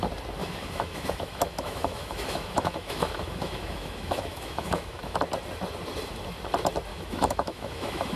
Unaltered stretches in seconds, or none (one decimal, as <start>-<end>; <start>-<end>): 0.0-0.4; 5.2-6.9